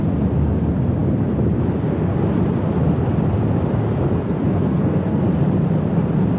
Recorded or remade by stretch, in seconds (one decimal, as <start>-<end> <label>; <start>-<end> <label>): 0.0-4.4 recorded; 4.4-5.2 remade; 5.2-6.4 recorded